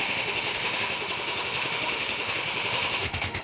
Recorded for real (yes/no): no